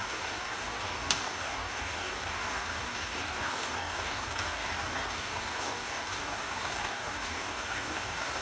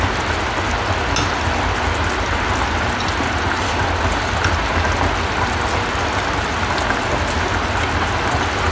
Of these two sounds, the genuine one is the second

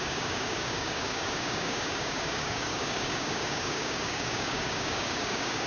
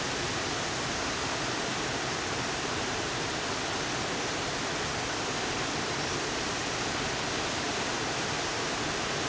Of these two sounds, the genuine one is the second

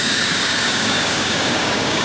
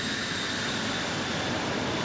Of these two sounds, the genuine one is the second